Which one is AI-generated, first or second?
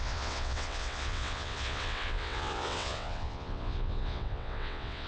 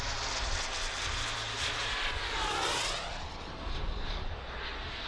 first